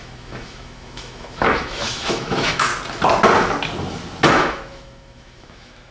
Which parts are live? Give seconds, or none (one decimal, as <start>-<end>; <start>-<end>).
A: 2.7-4.3